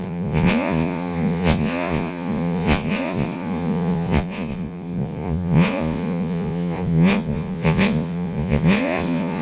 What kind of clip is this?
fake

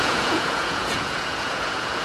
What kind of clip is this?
fake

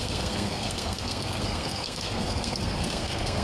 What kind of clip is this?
fake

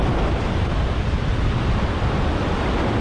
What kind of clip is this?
fake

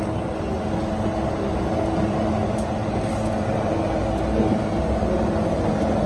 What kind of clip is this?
real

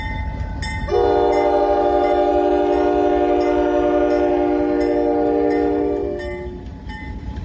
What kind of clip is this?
real